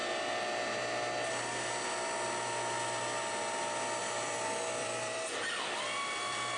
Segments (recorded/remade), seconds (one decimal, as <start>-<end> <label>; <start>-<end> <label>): 0.0-4.0 recorded; 4.0-6.6 remade

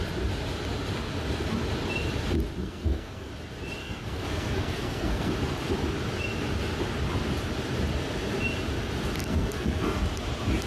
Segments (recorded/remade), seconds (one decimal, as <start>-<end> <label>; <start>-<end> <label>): 0.0-2.6 recorded; 2.6-3.3 remade; 3.3-3.8 recorded; 3.8-5.3 remade; 5.3-9.2 recorded; 9.2-10.0 remade; 10.0-10.7 recorded